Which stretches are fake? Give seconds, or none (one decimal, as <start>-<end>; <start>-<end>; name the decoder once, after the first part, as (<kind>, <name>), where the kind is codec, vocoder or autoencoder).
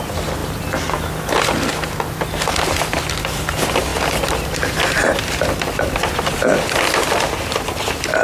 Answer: 3.9-6.3 (vocoder, BigVGAN v2)